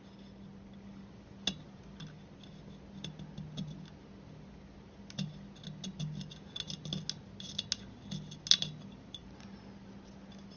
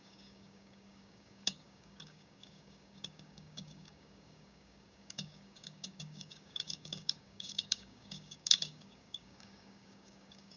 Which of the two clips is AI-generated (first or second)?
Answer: second